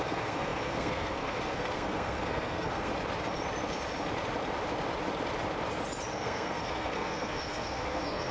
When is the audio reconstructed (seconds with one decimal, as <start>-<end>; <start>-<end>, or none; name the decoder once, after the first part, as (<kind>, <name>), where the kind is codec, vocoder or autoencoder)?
0.0-2.9 (codec, SNAC); 6.1-8.3

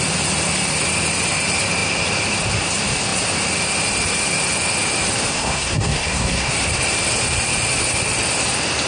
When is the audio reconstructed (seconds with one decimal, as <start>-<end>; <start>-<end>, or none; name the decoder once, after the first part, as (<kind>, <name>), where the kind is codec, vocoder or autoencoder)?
5.3-6.5 (codec, SNAC)

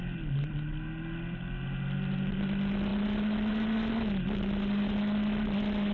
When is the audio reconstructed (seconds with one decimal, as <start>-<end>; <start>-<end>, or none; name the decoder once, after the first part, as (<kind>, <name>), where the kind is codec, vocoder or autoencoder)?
none

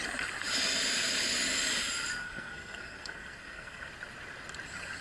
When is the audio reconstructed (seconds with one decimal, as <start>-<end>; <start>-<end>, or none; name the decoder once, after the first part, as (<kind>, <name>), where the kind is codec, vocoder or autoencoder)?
2.2-3.9 (codec, SNAC)

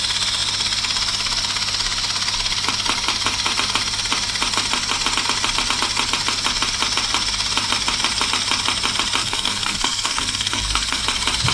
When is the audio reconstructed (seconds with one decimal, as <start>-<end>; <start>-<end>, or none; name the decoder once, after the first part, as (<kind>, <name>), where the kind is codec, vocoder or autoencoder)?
9.2-11.0 (codec, SNAC)

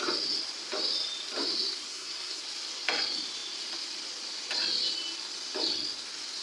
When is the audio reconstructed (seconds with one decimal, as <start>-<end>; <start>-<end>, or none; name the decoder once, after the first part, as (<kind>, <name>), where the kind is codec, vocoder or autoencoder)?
1.9-2.4 (codec, SNAC)

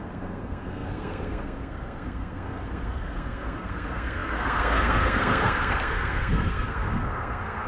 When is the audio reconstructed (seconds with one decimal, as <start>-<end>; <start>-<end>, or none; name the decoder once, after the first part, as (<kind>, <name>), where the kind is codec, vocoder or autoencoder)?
0.0-7.7 (codec, SNAC)